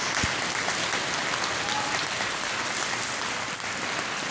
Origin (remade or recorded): recorded